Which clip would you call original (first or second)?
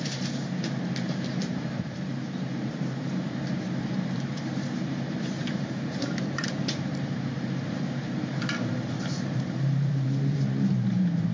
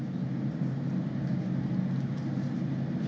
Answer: second